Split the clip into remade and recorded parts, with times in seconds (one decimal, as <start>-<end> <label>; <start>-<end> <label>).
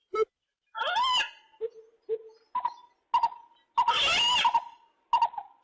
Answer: 0.0-5.6 recorded